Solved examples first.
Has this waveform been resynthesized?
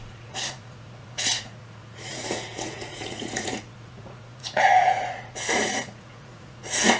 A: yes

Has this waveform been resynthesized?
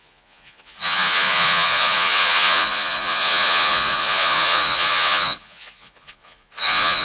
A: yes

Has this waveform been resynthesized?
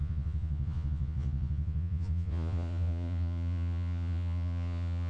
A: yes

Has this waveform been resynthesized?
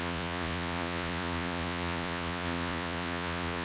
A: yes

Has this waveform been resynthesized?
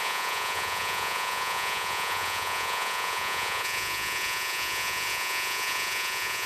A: yes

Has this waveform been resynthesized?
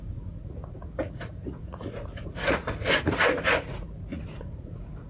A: yes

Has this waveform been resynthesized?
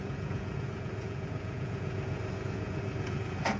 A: yes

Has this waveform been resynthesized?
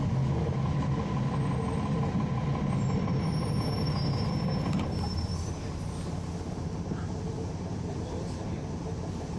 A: no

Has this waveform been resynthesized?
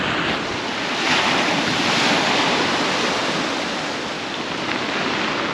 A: no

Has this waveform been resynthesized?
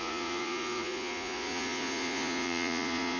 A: yes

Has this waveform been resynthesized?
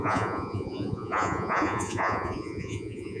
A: yes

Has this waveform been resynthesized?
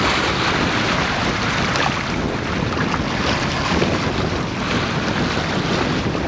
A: no